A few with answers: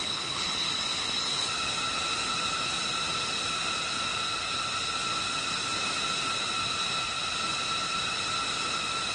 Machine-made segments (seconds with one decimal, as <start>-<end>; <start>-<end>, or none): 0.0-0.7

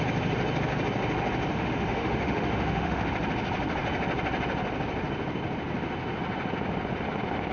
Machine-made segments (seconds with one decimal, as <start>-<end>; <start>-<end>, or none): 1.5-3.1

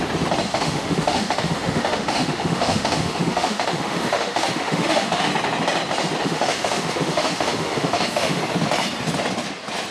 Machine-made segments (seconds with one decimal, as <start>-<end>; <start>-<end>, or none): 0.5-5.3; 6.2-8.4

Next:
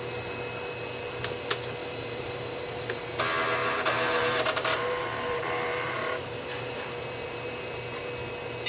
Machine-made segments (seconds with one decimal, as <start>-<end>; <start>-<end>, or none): 1.8-3.2; 3.6-8.1

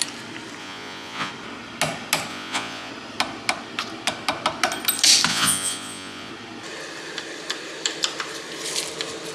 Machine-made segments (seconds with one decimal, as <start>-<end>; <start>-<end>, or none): 0.6-1.3; 2.3-2.9; 5.3-6.3

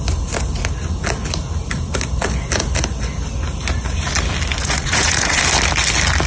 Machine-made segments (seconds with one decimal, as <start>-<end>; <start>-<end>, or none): 4.6-5.4

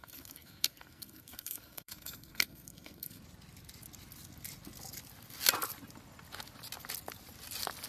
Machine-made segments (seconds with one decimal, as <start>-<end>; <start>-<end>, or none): 0.0-3.2